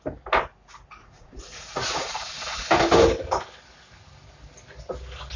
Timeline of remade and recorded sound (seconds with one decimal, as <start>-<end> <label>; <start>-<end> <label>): 0.0-1.0 recorded; 1.0-2.7 remade; 2.7-5.4 recorded